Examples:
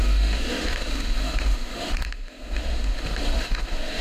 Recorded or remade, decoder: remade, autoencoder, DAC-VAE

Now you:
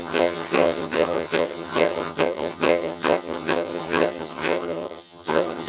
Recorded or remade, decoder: remade, vocoder, HiFi-GAN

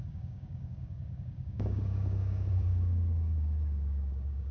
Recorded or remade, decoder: remade, codec, DAC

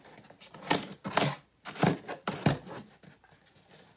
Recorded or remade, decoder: recorded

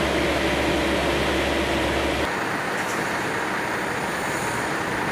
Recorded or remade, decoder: recorded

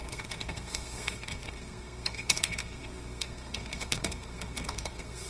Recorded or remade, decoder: remade, codec, SNAC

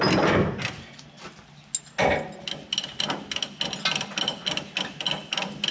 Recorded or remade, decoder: recorded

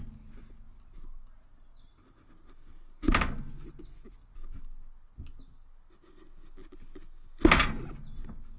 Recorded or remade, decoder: recorded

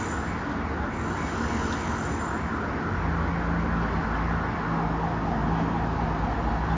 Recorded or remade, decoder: recorded